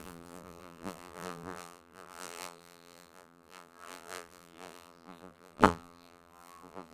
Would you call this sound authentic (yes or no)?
no